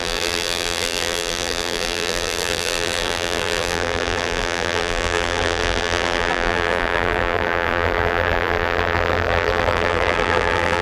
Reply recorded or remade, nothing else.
remade